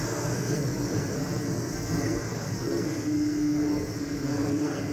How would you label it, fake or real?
fake